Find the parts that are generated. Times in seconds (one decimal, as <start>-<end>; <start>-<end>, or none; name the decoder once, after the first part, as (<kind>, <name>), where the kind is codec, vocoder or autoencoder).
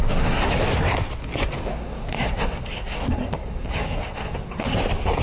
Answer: 0.0-0.6 (codec, SNAC); 1.7-4.8